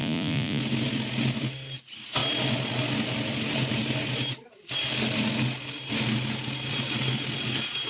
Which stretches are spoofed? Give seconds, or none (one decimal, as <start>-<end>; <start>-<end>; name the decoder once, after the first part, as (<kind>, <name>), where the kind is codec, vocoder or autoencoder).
0.0-0.6 (vocoder, Vocos)